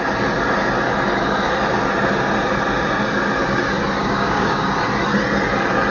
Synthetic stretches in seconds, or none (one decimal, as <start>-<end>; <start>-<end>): 4.0-4.7